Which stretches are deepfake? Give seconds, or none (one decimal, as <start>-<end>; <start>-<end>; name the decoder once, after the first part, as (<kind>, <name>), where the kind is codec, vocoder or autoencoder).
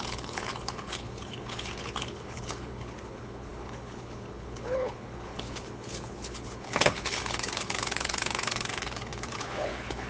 0.0-10.1 (codec, HILCodec)